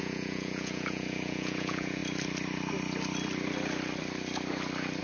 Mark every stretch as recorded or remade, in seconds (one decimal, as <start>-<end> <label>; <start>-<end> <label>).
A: 0.0-2.0 remade; 2.0-5.0 recorded